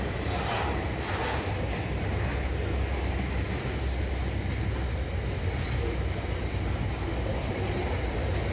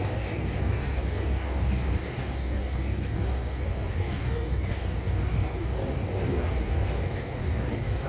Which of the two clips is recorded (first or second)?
first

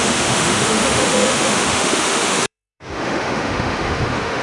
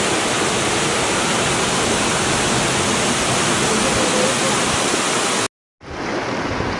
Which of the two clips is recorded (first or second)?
second